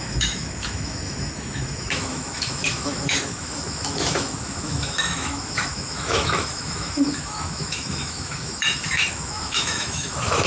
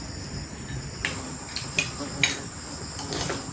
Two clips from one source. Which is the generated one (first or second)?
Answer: first